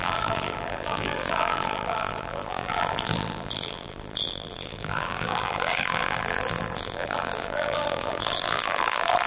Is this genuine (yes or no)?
no